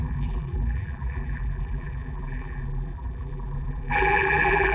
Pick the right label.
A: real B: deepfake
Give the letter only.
B